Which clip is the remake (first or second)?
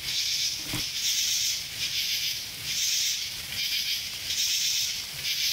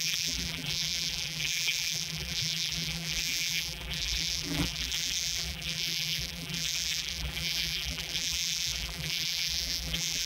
second